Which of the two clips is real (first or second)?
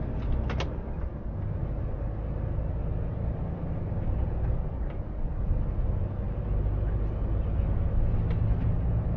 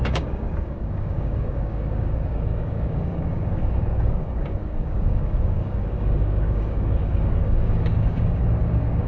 first